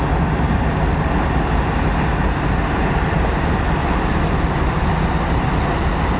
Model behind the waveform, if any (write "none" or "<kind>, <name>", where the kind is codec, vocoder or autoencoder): none